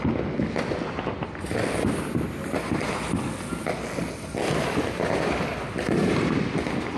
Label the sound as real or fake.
real